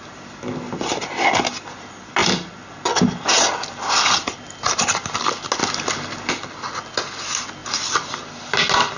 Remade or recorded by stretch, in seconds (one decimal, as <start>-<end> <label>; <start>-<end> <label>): 0.0-9.0 recorded